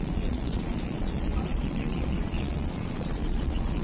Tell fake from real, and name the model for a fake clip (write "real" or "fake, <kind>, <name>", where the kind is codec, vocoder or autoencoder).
fake, vocoder, Vocos